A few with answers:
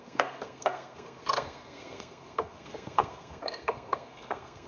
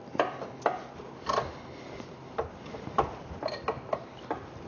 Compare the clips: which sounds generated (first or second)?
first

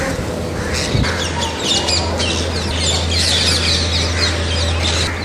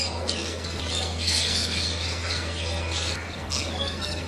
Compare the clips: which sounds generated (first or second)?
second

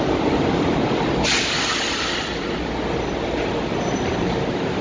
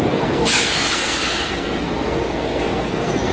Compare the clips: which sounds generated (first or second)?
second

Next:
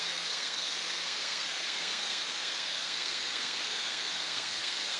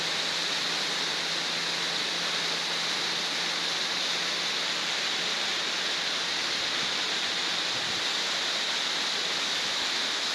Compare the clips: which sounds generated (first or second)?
first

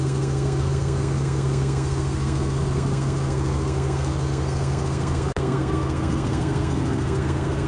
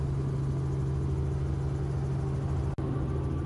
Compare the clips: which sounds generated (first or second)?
first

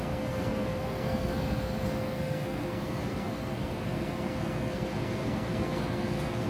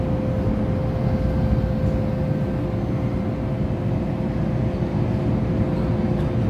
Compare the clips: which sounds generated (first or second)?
first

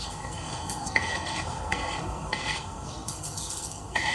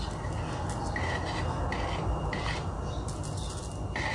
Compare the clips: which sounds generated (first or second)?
first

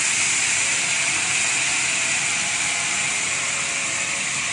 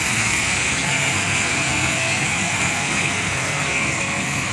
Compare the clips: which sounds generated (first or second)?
second